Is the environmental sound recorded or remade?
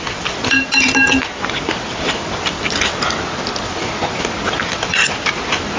recorded